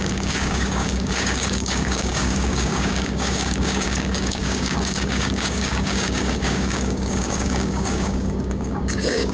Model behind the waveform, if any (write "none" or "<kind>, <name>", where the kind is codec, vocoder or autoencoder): codec, DAC